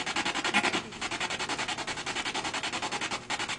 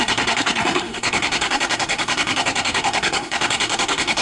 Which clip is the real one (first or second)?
first